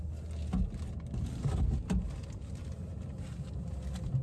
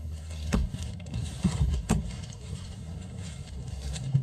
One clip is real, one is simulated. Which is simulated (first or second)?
second